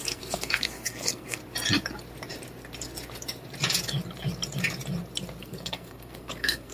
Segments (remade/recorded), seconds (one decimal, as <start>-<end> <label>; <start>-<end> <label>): 0.0-1.4 remade; 1.4-5.4 recorded; 5.4-6.7 remade